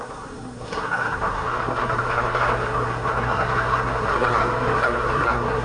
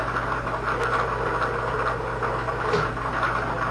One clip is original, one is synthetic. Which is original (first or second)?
second